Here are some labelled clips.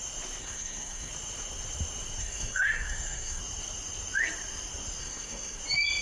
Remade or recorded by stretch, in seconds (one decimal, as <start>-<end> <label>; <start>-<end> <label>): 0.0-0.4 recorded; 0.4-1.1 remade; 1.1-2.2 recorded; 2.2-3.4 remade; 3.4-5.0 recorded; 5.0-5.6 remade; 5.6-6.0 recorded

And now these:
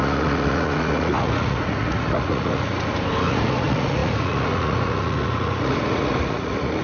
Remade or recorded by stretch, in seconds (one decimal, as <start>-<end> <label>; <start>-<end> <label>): 0.0-2.7 remade; 2.7-3.2 recorded; 3.2-6.8 remade

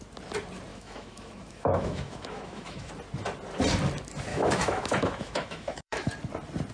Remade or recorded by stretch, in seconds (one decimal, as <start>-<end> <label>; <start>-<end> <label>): 0.0-0.7 recorded; 0.7-2.9 remade; 2.9-4.3 recorded; 4.3-6.1 remade; 6.1-6.7 recorded

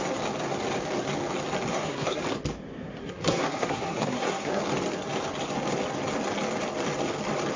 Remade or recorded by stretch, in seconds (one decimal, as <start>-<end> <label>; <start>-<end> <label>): 0.0-1.7 recorded; 1.7-2.2 remade; 2.2-3.0 recorded; 3.0-4.6 remade; 4.6-7.6 recorded